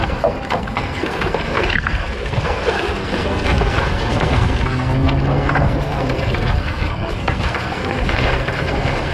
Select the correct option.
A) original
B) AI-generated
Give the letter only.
B